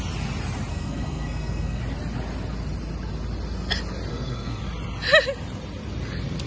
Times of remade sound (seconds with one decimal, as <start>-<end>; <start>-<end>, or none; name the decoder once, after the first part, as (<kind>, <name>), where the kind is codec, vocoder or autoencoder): 0.7-1.8 (codec, SNAC); 4.1-4.6